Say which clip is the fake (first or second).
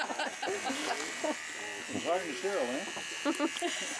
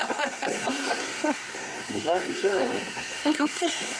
second